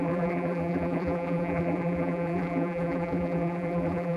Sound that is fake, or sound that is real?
fake